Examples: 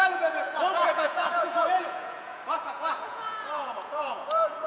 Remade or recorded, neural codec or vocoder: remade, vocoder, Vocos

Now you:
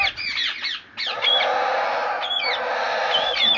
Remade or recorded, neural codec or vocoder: recorded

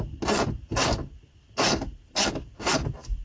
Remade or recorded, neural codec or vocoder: recorded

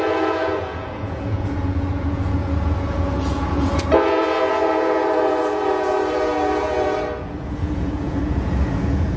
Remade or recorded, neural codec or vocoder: remade, vocoder, Vocos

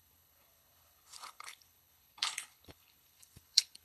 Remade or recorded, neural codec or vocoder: remade, codec, HILCodec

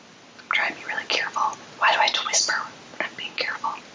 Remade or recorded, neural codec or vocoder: recorded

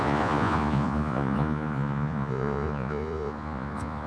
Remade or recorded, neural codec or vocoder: remade, vocoder, Vocos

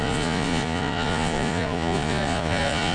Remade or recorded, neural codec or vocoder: remade, vocoder, Vocos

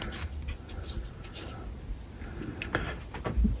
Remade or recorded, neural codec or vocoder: recorded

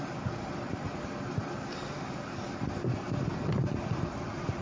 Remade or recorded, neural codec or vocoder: recorded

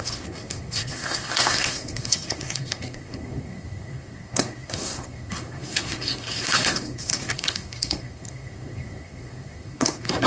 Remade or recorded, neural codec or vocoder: remade, codec, SNAC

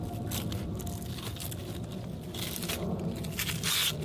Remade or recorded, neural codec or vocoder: recorded